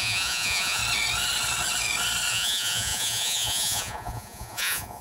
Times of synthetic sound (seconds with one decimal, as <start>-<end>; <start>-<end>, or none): 0.0-0.8; 2.3-5.0